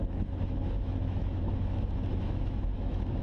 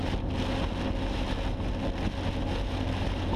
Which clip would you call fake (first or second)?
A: first